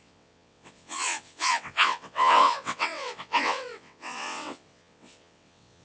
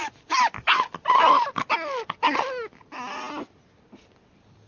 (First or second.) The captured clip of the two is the second